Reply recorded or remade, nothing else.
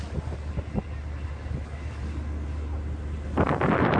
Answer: recorded